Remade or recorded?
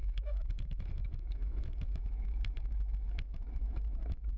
remade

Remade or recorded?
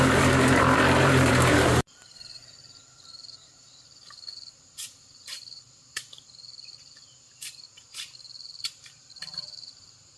remade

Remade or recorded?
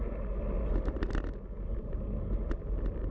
recorded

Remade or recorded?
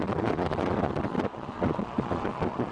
remade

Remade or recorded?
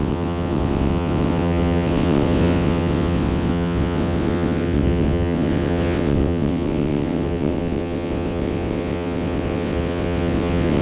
remade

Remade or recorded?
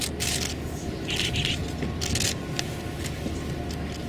recorded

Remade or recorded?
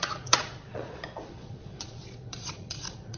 remade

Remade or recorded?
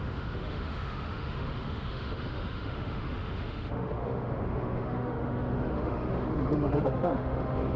remade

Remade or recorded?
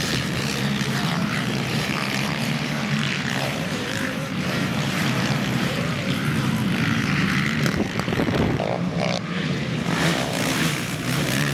remade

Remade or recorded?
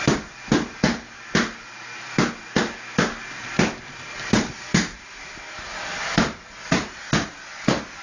recorded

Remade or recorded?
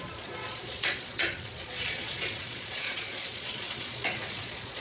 remade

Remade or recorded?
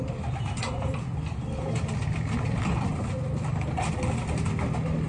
recorded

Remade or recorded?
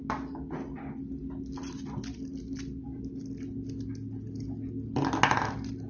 recorded